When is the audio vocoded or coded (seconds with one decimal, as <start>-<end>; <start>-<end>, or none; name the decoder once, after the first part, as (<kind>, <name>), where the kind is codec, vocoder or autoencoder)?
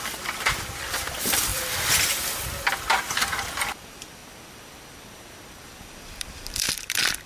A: 0.0-4.2 (vocoder, BigVGAN v2)